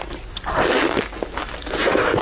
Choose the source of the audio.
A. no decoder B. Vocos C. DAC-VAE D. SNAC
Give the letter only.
A